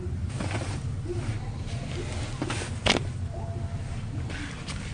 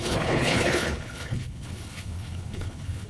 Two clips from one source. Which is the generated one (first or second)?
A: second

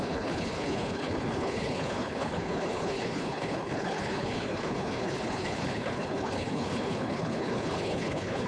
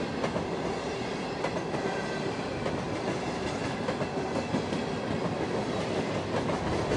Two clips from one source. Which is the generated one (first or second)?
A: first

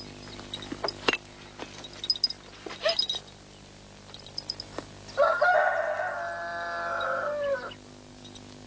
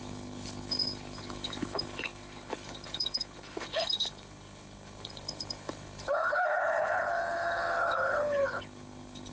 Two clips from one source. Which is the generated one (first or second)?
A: second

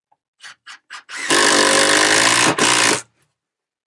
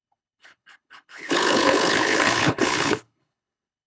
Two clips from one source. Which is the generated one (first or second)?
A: second